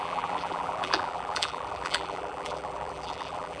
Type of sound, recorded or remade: remade